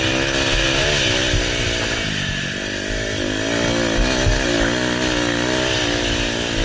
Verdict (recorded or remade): recorded